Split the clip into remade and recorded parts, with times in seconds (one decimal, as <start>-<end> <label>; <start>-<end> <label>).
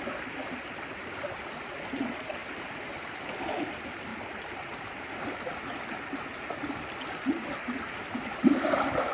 0.0-9.1 recorded